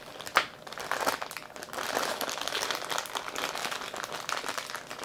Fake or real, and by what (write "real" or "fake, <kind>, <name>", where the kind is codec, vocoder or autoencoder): real